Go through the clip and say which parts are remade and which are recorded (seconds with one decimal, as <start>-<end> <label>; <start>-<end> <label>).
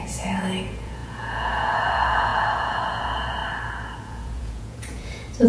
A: 0.0-3.4 remade; 3.4-4.0 recorded; 4.0-5.5 remade